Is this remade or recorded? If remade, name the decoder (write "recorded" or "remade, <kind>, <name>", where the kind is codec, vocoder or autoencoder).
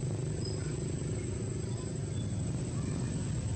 recorded